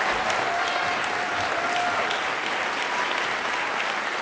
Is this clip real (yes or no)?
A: yes